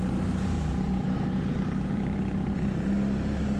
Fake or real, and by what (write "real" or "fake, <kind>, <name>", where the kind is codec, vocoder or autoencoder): real